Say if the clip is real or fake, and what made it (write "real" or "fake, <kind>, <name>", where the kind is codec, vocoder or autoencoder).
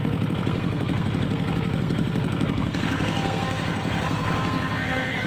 fake, codec, SNAC